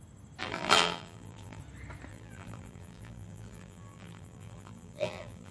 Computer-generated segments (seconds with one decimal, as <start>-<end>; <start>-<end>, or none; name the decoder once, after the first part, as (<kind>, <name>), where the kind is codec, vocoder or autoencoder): 0.4-1.6 (vocoder, BigVGAN v2); 2.1-5.5

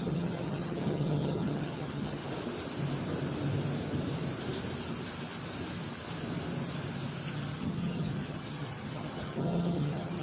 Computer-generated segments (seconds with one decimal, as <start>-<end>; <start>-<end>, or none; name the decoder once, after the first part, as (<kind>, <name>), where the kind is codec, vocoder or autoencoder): 0.0-2.2 (vocoder, HiFi-GAN); 7.3-10.2

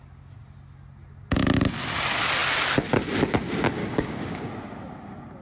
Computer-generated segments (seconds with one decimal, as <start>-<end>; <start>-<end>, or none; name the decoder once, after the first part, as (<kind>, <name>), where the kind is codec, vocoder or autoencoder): 3.8-4.5 (codec, DAC)

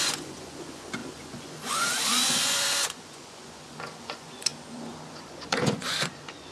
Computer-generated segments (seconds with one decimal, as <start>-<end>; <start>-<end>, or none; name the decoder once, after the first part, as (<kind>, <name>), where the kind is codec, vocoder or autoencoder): 0.0-6.5 (vocoder, Vocos)

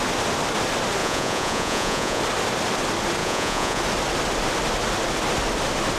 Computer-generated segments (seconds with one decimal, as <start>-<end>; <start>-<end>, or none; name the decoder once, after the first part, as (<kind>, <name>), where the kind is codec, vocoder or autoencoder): 1.0-2.2 (vocoder, Vocos); 3.2-3.8

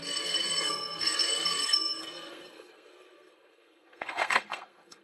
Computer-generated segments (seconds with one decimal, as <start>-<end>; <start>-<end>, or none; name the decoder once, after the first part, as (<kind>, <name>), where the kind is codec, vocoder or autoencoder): 0.0-5.0 (codec, SNAC)